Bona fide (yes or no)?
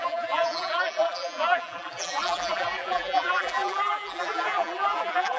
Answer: no